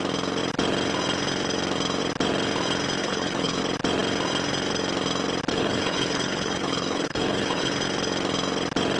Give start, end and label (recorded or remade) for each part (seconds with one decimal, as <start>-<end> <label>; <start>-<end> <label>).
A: 0.0-3.0 recorded; 3.0-3.6 remade; 3.6-5.5 recorded; 5.5-7.7 remade; 7.7-9.0 recorded

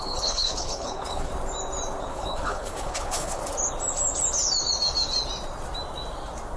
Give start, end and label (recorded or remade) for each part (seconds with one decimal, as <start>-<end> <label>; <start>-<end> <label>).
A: 0.0-1.3 remade; 1.3-2.0 recorded; 2.0-3.4 remade; 3.4-6.6 recorded

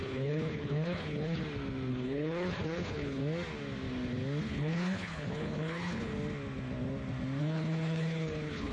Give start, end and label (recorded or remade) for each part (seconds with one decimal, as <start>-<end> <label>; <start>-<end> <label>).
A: 0.0-1.4 remade; 1.4-1.9 recorded; 1.9-3.2 remade; 3.2-4.4 recorded; 4.4-6.1 remade; 6.1-7.4 recorded; 7.4-8.7 remade

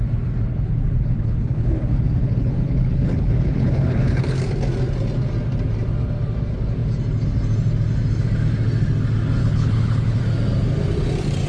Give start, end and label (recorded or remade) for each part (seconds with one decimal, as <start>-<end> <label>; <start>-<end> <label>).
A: 0.0-0.5 recorded; 0.5-4.4 remade; 4.4-9.4 recorded; 9.4-10.2 remade; 10.2-11.5 recorded

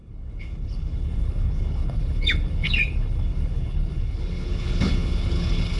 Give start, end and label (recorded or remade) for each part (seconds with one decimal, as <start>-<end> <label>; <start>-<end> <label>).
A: 0.0-5.8 remade